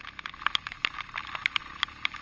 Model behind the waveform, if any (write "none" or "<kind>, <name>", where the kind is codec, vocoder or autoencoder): none